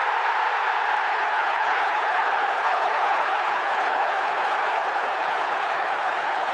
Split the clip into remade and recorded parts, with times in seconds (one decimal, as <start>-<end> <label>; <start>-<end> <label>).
0.0-1.1 recorded; 1.1-6.5 remade